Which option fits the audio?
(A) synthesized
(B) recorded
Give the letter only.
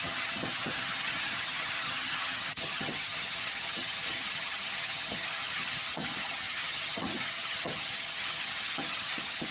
A